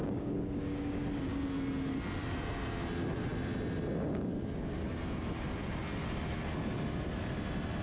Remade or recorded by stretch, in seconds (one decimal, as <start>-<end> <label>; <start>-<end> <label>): 0.0-1.3 remade; 1.3-7.8 recorded